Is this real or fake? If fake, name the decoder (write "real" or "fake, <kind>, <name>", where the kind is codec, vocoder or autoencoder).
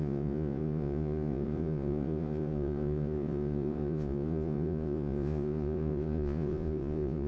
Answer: fake, vocoder, Vocos